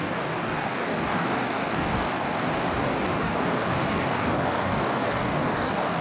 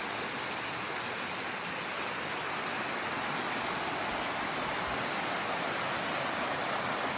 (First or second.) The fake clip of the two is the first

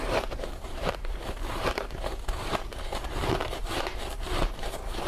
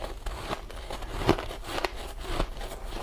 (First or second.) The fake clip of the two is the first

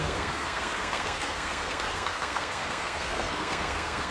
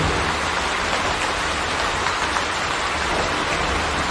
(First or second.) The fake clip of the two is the first